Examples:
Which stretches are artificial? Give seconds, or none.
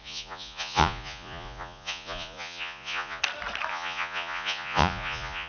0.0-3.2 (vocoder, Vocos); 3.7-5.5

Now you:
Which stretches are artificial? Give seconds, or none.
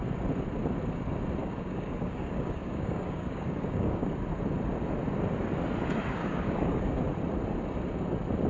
1.4-4.1 (codec, DAC); 6.2-7.0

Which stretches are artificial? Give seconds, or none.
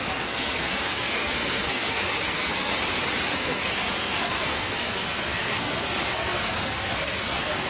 0.0-2.7 (codec, SNAC); 3.3-7.7